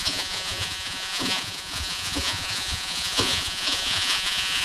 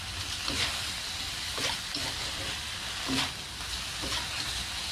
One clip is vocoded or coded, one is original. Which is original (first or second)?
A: second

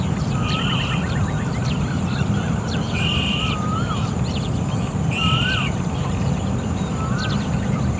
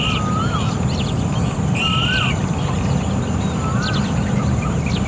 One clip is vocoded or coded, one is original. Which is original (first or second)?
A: second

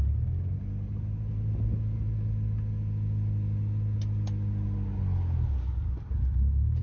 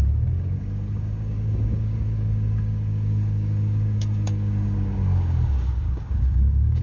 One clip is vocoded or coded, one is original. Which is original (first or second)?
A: first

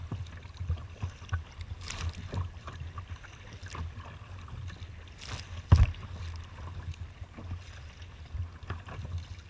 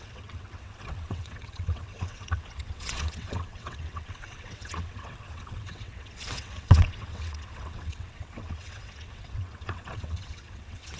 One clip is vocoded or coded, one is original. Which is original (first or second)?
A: first